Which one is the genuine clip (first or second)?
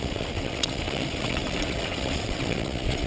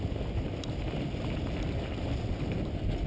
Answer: second